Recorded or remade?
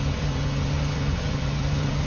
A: remade